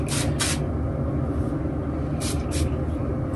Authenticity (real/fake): real